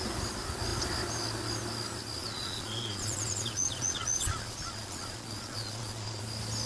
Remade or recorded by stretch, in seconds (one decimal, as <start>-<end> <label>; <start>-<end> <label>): 0.0-2.2 recorded; 2.2-6.2 remade; 6.2-6.7 recorded